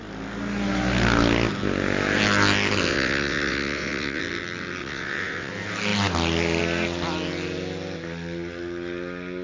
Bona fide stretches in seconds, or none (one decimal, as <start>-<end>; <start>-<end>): 0.0-2.9; 4.2-4.8; 5.5-9.4